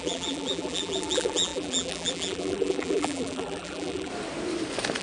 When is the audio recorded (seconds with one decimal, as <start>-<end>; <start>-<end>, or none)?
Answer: 4.1-5.0